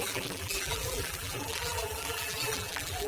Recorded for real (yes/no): no